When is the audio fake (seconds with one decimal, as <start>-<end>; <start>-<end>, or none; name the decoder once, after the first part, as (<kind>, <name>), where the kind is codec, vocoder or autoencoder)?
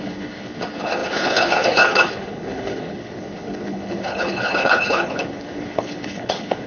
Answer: 0.0-6.7 (codec, HILCodec)